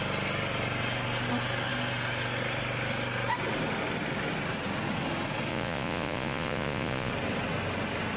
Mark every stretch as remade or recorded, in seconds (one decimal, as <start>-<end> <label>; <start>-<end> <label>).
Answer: 0.0-5.5 recorded; 5.5-7.1 remade; 7.1-8.2 recorded